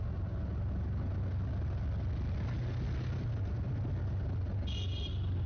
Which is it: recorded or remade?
recorded